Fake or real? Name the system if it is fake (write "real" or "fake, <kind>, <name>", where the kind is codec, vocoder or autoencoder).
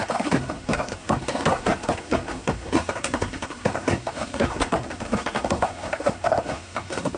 fake, codec, SNAC